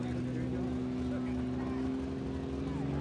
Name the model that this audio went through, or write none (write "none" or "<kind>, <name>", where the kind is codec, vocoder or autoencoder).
none